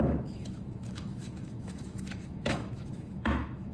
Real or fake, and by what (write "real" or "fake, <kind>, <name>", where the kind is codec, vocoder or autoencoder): fake, autoencoder, DAC-VAE